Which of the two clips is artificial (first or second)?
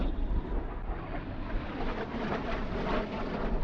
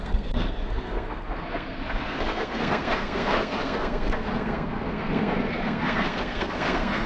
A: second